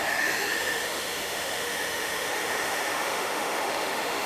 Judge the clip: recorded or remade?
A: remade